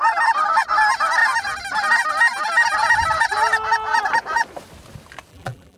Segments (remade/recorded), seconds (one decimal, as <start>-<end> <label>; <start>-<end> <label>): 0.0-5.3 recorded; 5.3-5.8 remade